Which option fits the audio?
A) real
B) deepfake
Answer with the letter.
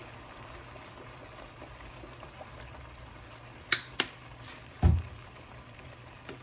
B